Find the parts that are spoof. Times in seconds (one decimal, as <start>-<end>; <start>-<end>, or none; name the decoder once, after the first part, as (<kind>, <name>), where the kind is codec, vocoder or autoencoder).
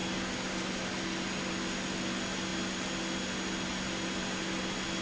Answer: none